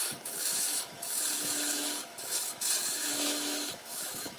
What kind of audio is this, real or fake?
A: fake